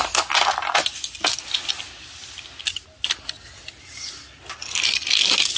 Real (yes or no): yes